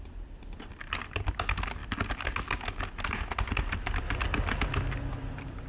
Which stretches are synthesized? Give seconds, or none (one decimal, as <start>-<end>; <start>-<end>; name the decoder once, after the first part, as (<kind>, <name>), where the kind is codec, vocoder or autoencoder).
none